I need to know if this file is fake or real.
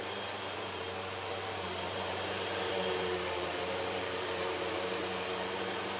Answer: fake